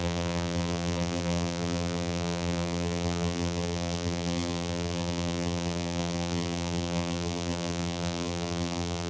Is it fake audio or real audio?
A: fake